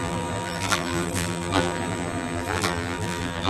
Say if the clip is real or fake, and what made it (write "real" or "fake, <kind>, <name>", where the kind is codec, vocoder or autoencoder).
fake, vocoder, BigVGAN v2